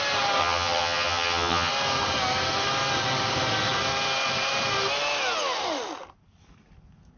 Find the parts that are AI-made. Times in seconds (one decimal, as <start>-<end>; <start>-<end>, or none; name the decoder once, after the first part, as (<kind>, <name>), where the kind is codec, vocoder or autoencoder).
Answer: 0.4-1.7 (vocoder, HiFi-GAN)